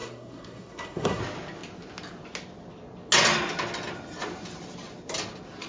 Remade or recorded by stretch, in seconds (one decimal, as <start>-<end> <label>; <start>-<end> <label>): 0.0-1.2 remade; 1.2-5.7 recorded